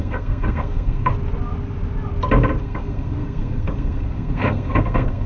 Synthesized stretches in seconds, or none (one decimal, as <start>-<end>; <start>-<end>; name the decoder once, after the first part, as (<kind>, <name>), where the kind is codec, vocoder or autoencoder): 0.0-1.1 (codec, SNAC); 2.6-5.3